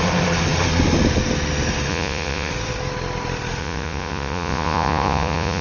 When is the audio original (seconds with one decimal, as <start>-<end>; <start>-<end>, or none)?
0.0-1.9; 2.5-3.6